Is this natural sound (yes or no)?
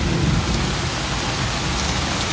yes